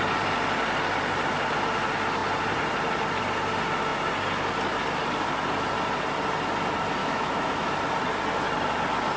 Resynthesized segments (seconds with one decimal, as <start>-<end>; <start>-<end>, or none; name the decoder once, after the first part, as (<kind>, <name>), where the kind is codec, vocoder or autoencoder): 7.0-7.7 (autoencoder, DAC-VAE)